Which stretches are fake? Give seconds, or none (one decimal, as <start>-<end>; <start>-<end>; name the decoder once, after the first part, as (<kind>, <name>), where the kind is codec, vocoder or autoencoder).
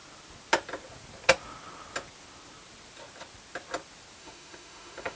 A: 4.2-5.2 (autoencoder, DAC-VAE)